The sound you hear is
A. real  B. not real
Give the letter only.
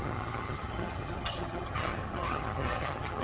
B